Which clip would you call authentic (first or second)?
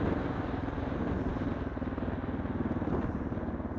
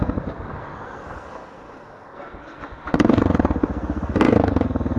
first